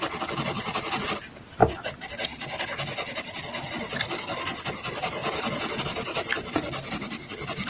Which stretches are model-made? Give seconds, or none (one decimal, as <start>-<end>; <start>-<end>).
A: 5.2-5.8